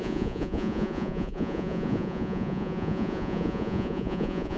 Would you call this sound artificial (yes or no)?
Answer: yes